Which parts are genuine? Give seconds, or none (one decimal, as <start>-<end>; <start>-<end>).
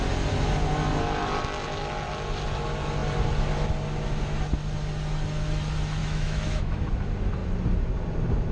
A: 0.0-6.0; 6.9-8.5